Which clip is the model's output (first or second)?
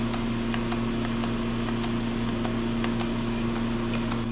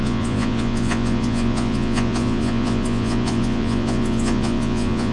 second